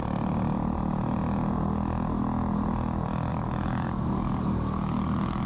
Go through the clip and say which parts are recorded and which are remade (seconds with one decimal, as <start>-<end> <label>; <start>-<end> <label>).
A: 0.0-3.3 recorded; 3.3-5.5 remade

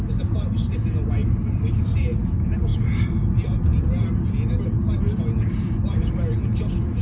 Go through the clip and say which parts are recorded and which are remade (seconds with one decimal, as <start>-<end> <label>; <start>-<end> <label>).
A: 0.0-7.0 recorded

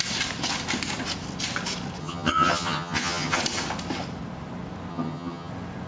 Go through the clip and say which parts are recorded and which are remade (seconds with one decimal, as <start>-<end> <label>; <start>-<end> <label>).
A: 0.0-2.0 recorded; 2.0-3.4 remade; 3.4-4.9 recorded; 4.9-5.5 remade; 5.5-5.9 recorded